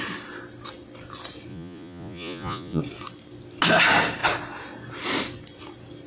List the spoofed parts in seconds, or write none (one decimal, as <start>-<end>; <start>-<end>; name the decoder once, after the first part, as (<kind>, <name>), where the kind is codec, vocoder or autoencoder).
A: 1.5-2.8 (vocoder, Vocos)